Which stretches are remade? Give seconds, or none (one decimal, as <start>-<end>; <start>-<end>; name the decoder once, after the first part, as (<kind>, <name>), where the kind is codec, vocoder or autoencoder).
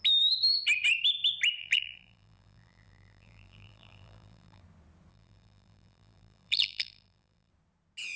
1.6-4.6 (vocoder, BigVGAN v2); 5.1-7.5